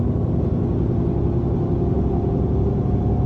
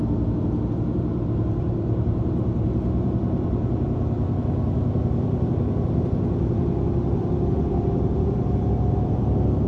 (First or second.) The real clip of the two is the first